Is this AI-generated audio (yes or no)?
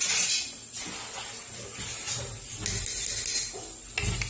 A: no